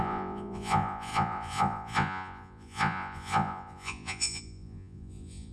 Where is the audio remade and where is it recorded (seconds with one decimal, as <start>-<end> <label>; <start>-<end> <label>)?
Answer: 0.0-5.5 remade